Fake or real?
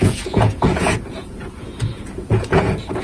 fake